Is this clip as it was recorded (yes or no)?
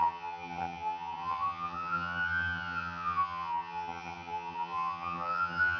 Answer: no